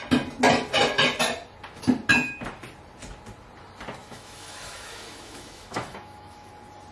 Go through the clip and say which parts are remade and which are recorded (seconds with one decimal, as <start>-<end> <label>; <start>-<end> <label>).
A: 0.0-4.0 recorded; 4.0-6.5 remade; 6.5-6.9 recorded